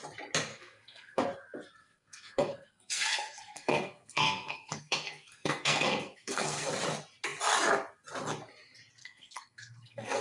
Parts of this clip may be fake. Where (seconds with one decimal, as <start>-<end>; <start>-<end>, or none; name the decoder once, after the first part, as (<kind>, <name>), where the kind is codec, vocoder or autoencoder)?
0.5-1.2 (codec, SNAC); 1.8-6.7; 9.0-10.2